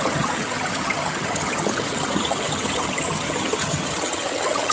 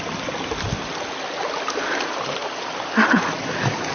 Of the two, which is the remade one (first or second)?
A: first